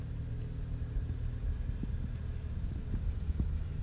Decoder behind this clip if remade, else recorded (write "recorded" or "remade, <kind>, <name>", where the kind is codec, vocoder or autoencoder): recorded